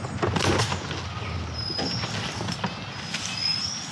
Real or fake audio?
real